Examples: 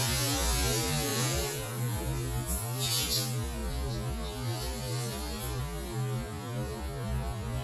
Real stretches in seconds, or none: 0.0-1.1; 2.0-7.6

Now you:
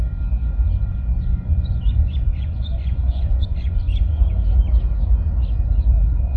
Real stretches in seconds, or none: 0.0-0.9; 4.3-6.4

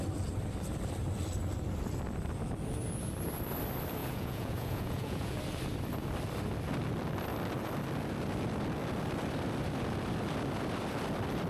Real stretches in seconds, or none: 0.0-4.0; 5.4-11.5

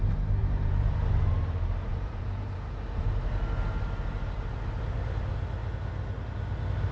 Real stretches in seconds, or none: 0.0-0.4; 1.3-1.9; 3.0-6.9

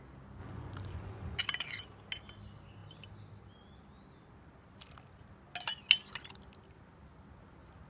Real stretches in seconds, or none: 0.0-0.4; 1.4-7.9